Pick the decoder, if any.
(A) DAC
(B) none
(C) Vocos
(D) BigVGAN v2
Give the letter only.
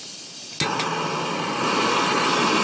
B